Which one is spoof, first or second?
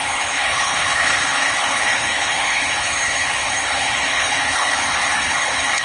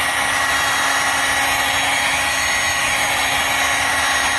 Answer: first